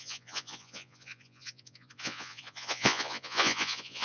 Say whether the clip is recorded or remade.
remade